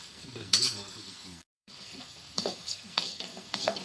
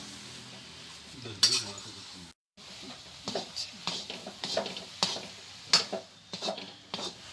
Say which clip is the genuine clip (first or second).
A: second